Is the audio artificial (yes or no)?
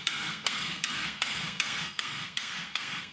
yes